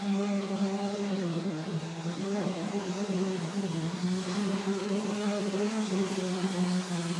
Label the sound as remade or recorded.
remade